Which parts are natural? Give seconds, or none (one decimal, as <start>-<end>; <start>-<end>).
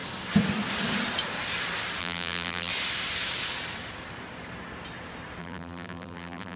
0.0-2.0; 2.7-5.4